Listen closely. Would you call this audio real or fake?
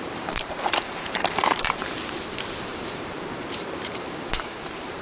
fake